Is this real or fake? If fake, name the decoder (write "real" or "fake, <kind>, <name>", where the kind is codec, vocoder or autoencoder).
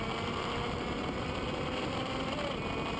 real